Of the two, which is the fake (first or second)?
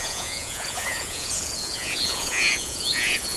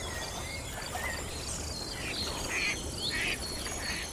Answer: first